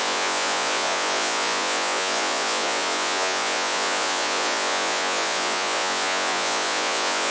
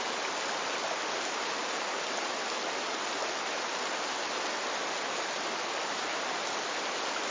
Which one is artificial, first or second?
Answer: first